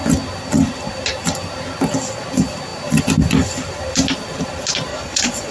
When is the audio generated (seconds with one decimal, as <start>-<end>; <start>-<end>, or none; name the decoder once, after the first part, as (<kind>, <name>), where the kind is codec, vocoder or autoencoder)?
4.9-5.5 (vocoder, Vocos)